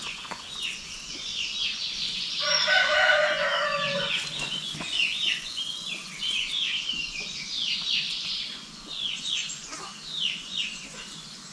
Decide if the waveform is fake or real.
fake